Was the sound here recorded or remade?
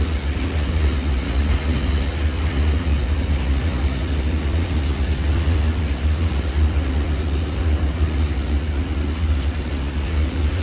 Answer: remade